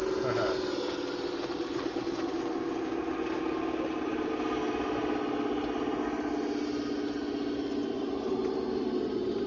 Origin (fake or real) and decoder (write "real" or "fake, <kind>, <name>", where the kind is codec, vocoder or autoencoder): real